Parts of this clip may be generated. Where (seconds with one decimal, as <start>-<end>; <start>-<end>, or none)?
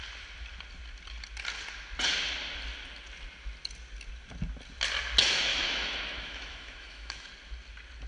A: 5.5-7.3